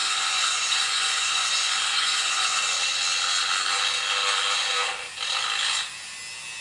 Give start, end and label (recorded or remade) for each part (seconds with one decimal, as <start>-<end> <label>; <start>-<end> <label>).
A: 0.0-2.6 remade; 2.6-6.6 recorded